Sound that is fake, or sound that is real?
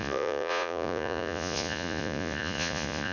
fake